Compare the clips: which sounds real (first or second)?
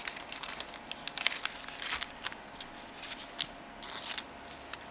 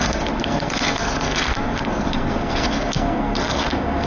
first